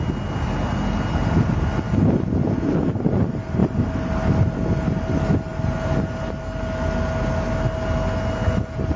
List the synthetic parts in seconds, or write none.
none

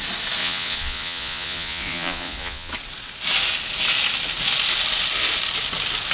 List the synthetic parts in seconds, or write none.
0.4-2.7

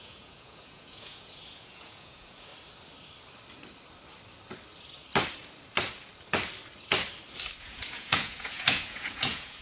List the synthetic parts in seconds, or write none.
0.0-2.5; 7.6-9.6

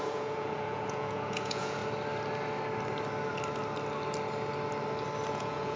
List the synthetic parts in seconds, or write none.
0.0-1.8; 5.3-5.8

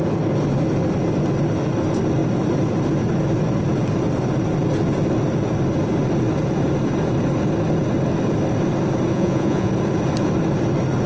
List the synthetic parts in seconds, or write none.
9.1-9.7